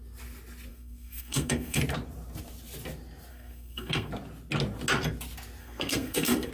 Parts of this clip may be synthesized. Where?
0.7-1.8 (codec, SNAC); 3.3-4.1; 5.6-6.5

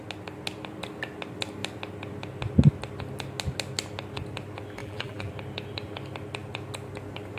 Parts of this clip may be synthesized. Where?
4.8-5.3 (vocoder, BigVGAN v2)

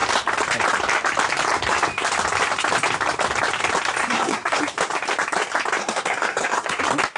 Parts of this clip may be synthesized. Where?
4.0-4.6 (codec, SNAC); 5.8-6.8

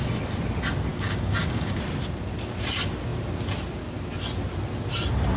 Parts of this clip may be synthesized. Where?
0.9-1.8 (codec, DAC)

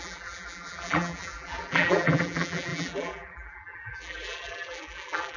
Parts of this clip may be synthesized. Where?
0.0-5.4 (vocoder, BigVGAN v2)